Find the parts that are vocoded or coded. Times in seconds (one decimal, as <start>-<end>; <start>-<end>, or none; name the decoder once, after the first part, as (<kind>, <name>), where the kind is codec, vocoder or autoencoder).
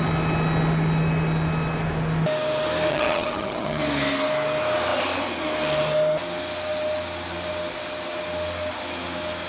2.9-3.8 (vocoder, HiFi-GAN)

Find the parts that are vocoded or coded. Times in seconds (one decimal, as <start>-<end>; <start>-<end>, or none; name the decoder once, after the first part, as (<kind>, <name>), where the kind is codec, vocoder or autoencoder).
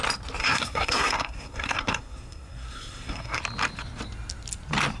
0.4-3.4 (codec, SNAC)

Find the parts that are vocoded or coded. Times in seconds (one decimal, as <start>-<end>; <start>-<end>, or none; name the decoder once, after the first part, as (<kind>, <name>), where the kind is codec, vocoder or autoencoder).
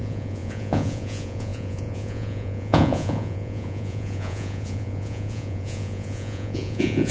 0.0-7.1 (vocoder, Vocos)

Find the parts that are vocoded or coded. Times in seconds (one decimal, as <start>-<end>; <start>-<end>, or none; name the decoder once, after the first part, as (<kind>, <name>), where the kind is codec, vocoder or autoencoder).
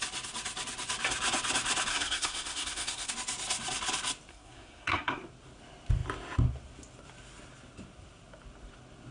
1.9-3.1 (codec, SNAC); 4.3-5.2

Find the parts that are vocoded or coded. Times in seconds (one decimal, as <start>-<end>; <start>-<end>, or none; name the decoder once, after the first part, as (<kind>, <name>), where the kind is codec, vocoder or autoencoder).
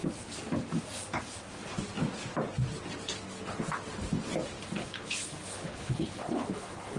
5.0-7.0 (codec, HILCodec)